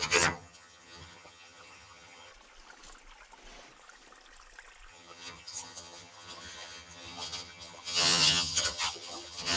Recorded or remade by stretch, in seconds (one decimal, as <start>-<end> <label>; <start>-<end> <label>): 0.0-2.3 remade; 2.3-4.9 recorded; 4.9-9.6 remade